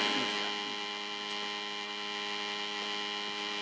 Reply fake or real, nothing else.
real